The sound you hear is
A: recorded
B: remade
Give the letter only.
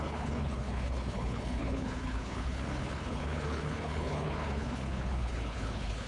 B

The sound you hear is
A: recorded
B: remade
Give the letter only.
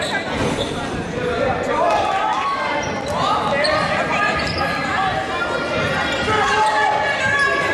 A